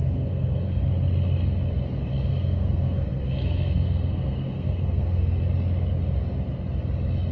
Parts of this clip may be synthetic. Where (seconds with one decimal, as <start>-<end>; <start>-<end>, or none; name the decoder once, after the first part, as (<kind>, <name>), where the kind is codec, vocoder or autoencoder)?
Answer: 0.0-0.8 (codec, SNAC); 2.3-5.4